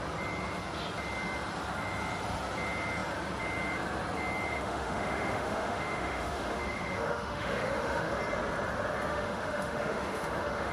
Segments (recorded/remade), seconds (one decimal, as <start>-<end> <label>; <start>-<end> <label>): 0.0-4.5 recorded; 4.5-8.2 remade; 8.2-9.1 recorded; 9.1-10.7 remade